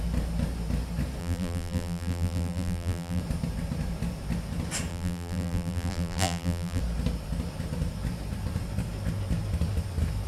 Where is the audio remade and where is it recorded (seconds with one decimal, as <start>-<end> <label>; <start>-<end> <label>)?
0.0-1.2 recorded; 1.2-3.2 remade; 3.2-4.9 recorded; 4.9-6.8 remade; 6.8-10.3 recorded